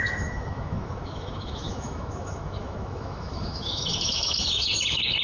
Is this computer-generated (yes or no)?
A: yes